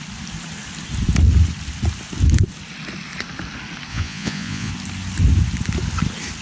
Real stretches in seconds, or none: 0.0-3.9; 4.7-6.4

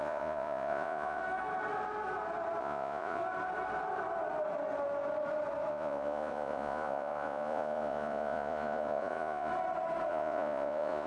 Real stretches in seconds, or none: 1.2-2.6; 3.2-5.7; 9.5-10.1

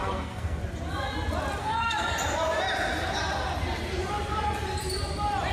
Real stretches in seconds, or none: 0.6-1.6; 2.1-5.5

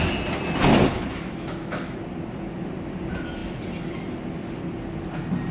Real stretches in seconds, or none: 0.0-0.9; 2.0-5.5